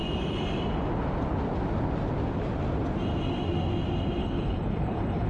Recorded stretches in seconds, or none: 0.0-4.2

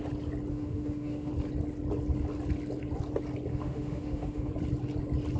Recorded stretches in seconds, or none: 0.0-0.5; 1.3-3.5; 4.5-5.4

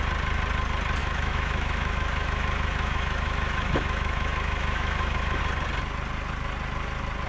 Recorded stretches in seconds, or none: 0.0-1.0; 5.4-7.3